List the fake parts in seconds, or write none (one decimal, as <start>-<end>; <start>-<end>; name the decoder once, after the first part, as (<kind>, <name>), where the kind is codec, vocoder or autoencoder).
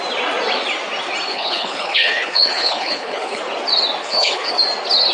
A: 1.3-3.4 (codec, HILCodec); 4.0-4.5